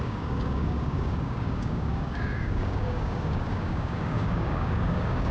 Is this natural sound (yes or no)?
no